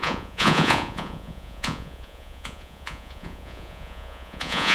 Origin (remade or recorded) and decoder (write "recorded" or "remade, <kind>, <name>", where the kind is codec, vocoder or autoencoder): remade, vocoder, Vocos